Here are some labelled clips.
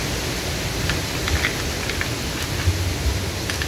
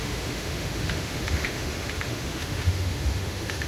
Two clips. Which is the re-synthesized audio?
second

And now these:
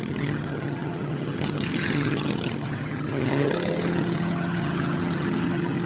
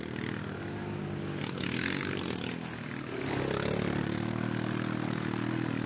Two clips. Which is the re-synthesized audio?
first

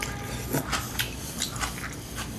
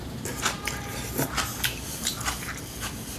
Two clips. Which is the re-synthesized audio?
second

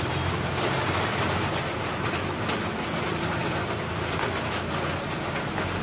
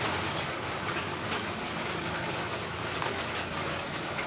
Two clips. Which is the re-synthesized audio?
second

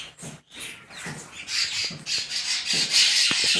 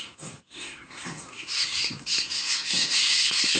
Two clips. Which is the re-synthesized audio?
second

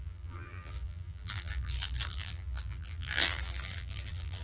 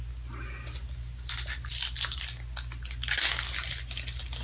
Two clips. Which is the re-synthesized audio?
first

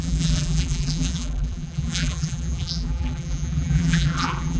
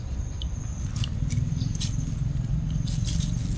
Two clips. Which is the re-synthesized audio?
first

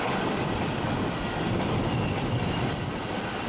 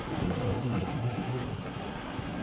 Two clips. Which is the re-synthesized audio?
second